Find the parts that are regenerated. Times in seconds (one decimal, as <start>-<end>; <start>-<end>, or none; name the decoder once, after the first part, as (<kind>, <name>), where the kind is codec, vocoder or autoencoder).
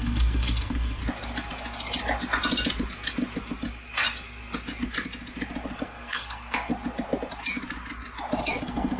0.0-1.0 (codec, SNAC); 5.8-6.7; 8.4-9.0